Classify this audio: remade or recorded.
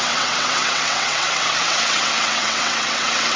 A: remade